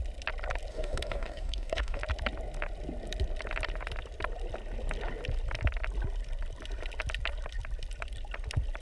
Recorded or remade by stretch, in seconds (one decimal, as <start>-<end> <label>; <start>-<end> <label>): 0.0-0.7 recorded; 0.7-2.0 remade; 2.0-8.8 recorded